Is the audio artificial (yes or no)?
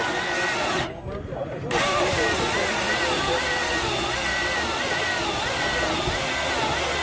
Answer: no